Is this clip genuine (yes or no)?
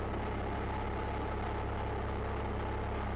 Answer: yes